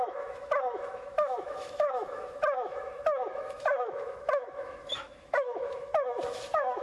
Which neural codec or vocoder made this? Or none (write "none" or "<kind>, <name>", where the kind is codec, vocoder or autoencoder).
autoencoder, DAC-VAE